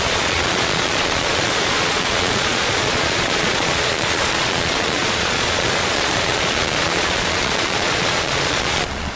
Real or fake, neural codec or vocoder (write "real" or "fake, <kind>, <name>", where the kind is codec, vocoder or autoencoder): fake, vocoder, Vocos